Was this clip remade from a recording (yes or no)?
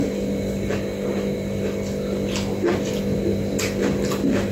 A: no